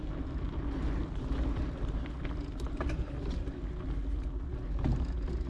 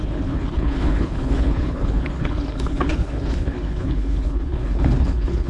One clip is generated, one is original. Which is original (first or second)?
first